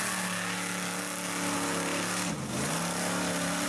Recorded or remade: recorded